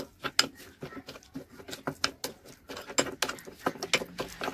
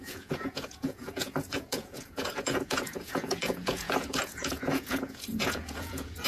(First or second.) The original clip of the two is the first